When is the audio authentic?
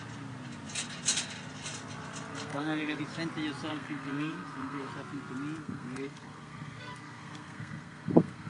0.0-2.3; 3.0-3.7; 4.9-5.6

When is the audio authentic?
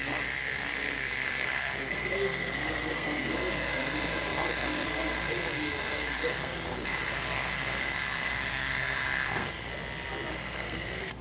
9.7-10.3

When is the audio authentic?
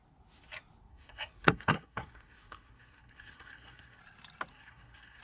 0.0-0.9; 4.0-4.5